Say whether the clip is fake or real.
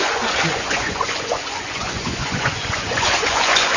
fake